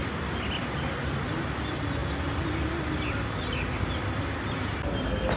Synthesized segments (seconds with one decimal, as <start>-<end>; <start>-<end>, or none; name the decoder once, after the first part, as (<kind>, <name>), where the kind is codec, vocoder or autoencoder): none